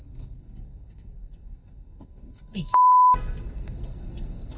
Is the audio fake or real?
fake